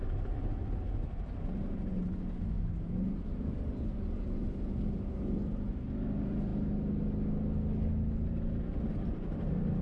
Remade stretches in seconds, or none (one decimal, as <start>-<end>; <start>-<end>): none

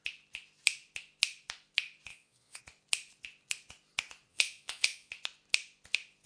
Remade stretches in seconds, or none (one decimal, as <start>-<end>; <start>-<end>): 2.1-2.6; 4.3-5.1

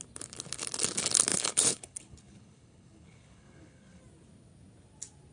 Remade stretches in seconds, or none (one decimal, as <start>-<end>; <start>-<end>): 1.3-4.0

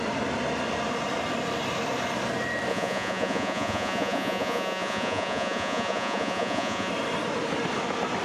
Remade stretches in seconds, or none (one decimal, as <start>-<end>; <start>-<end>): 2.7-6.9

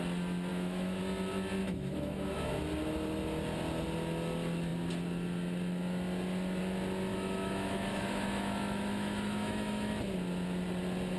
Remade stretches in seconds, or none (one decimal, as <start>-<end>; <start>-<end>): 0.5-1.0; 1.6-2.5; 7.1-9.9